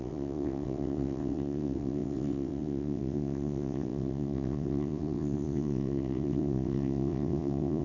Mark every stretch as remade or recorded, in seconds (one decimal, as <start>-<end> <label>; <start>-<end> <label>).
0.0-7.8 remade